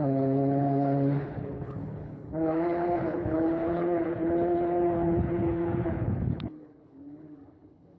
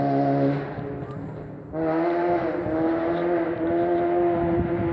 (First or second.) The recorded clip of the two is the second